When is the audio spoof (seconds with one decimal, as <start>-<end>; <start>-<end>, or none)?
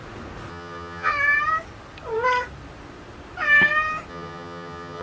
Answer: 0.5-1.1; 4.1-5.0